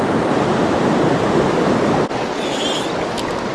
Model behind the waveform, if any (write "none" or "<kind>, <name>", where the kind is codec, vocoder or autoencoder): none